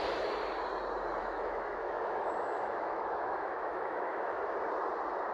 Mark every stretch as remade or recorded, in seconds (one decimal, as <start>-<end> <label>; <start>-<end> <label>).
0.0-1.2 recorded; 1.2-4.4 remade; 4.4-5.3 recorded